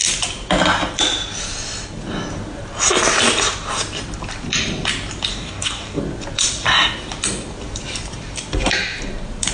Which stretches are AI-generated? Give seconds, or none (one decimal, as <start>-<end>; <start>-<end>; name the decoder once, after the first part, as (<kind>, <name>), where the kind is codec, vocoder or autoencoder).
5.3-6.0 (codec, DAC)